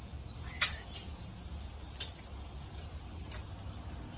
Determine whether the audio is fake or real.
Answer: real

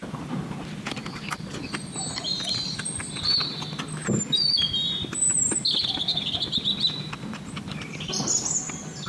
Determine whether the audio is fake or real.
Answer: real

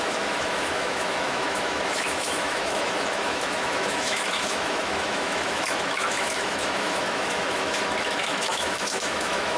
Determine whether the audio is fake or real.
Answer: fake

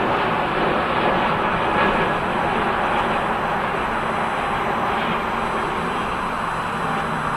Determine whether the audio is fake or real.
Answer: real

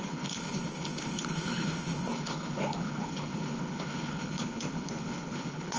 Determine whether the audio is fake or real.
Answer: fake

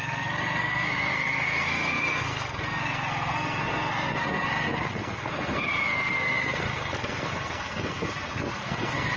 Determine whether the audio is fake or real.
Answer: fake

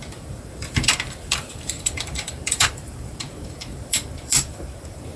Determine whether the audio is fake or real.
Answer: fake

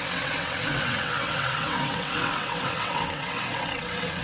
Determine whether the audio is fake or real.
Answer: fake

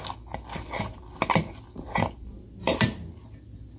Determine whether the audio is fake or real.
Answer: real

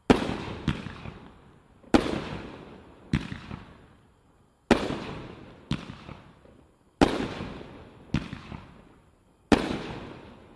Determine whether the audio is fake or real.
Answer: real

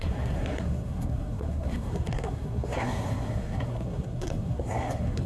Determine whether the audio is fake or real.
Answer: fake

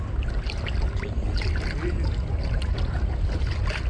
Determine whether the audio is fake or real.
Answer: real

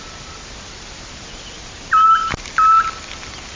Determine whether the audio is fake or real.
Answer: real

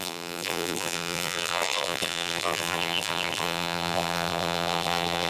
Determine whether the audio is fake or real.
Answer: fake